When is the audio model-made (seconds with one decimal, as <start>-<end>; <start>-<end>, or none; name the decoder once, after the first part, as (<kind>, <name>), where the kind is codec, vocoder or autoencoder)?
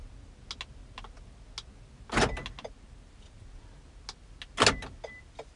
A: none